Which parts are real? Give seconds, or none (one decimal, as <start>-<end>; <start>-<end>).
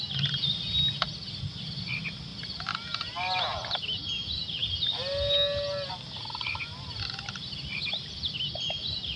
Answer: 0.0-9.2